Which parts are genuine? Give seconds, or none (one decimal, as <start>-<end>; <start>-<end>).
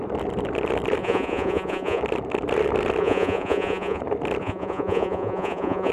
0.0-1.0; 2.0-3.0; 4.0-4.4